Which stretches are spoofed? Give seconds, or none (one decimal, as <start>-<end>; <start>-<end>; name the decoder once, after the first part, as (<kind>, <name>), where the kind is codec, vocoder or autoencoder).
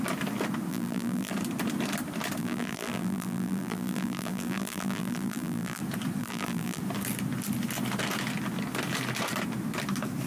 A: 0.7-1.3 (vocoder, BigVGAN v2); 2.4-5.8; 6.2-6.8